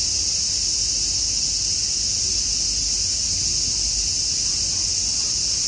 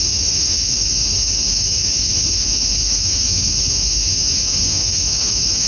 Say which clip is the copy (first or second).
second